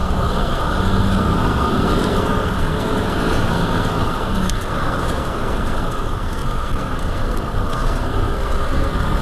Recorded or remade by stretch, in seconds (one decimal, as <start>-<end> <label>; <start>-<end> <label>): 0.0-9.2 remade